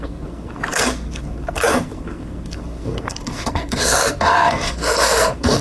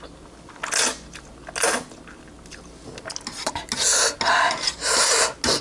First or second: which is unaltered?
second